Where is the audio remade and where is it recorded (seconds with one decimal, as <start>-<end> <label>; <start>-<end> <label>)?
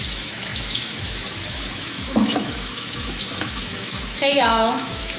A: 0.0-5.2 remade